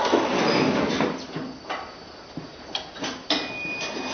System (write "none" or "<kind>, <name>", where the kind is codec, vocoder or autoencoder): none